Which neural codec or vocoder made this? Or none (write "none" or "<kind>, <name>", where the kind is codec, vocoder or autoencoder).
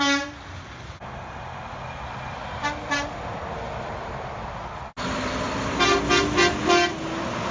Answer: none